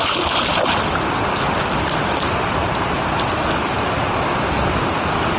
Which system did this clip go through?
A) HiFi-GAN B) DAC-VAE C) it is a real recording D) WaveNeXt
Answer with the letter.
C